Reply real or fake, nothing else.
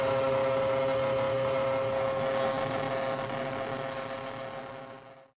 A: real